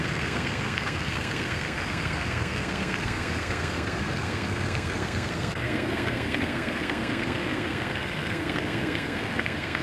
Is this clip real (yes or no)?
no